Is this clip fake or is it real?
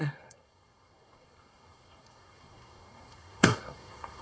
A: fake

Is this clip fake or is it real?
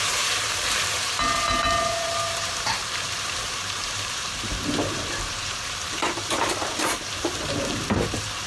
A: fake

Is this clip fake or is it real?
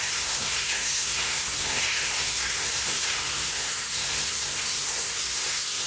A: fake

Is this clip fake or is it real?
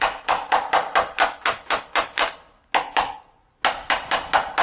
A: real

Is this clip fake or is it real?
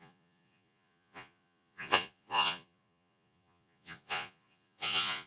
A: fake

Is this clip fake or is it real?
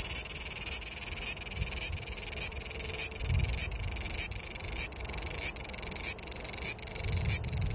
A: real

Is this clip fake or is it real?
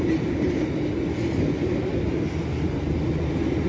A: real